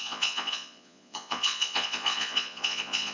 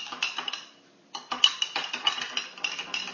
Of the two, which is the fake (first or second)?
first